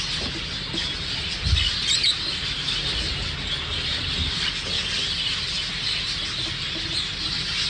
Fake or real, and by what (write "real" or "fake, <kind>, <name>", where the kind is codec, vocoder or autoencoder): real